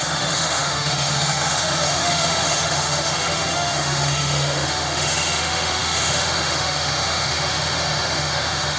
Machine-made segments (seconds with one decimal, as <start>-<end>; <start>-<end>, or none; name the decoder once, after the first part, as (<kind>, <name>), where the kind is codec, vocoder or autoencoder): 0.0-8.8 (autoencoder, DAC-VAE)

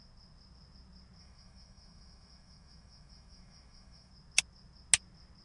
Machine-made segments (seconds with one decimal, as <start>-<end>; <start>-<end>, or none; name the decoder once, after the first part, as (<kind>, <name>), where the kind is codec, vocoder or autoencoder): 1.2-4.1 (autoencoder, DAC-VAE)

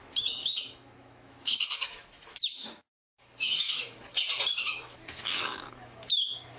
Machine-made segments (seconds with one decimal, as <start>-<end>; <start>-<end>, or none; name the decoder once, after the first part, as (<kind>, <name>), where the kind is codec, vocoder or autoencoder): 0.0-4.1 (autoencoder, DAC-VAE); 4.6-6.6

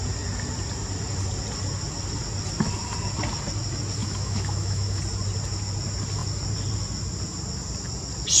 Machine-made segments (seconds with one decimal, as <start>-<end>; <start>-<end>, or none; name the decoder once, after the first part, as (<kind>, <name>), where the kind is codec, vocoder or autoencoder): 4.0-5.0 (autoencoder, DAC-VAE)

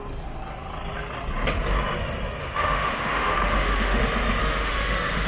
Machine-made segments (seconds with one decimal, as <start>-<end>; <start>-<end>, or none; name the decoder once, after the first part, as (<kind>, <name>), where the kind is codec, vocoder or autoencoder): 2.4-4.0 (autoencoder, DAC-VAE); 4.4-5.3

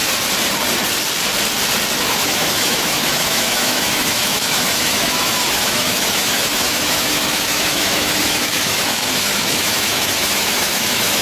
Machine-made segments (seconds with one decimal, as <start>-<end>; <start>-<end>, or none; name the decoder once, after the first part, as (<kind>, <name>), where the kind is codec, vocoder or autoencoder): 2.1-11.2 (autoencoder, DAC-VAE)

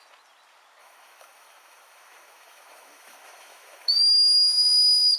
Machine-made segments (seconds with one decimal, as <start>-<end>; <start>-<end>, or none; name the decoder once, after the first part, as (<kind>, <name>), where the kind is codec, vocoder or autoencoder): 0.8-3.9 (autoencoder, DAC-VAE)